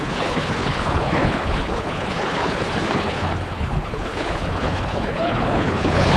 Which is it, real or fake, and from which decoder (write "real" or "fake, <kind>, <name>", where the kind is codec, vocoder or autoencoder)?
fake, codec, HILCodec